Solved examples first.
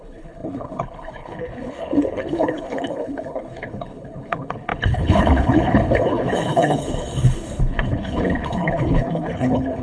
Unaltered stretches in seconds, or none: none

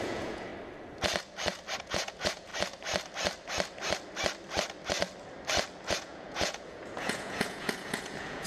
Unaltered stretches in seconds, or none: 0.5-1.8; 2.5-5.9

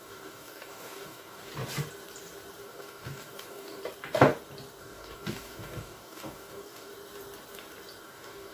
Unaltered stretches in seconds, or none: 1.5-2.6; 3.8-4.8; 6.9-8.0

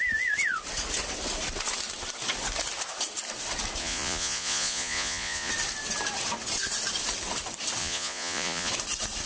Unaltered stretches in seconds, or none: 0.0-3.8; 5.5-7.8; 8.7-9.3

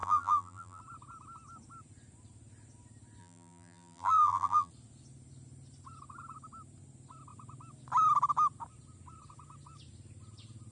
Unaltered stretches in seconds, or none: 0.8-3.2; 4.7-10.7

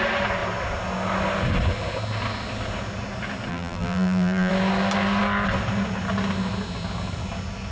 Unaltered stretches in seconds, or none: 0.0-3.5; 4.5-7.7

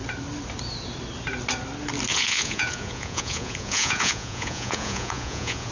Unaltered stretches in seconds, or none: 0.0-2.1

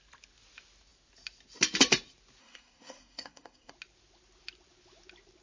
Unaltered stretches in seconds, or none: 0.0-2.4; 3.7-5.4